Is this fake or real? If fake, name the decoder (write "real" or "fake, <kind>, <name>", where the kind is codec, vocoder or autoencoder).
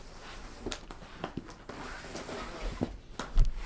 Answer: real